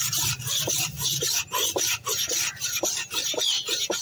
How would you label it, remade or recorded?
remade